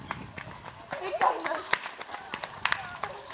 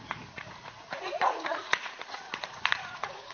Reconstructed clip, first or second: second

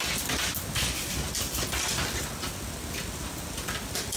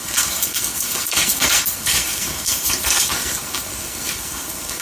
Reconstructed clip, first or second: second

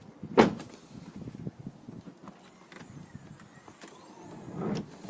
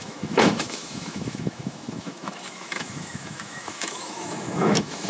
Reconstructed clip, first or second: second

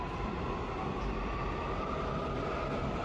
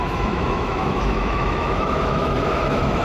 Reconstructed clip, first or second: second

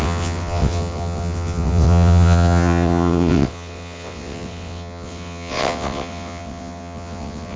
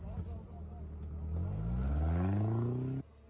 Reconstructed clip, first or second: first